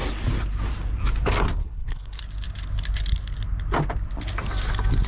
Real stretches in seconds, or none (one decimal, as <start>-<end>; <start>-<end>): 0.0-1.6; 2.2-5.1